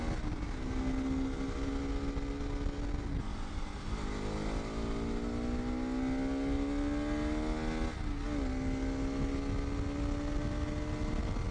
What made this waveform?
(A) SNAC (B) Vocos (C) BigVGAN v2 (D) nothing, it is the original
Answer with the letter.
D